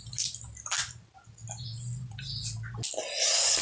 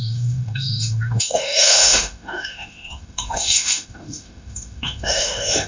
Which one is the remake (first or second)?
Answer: second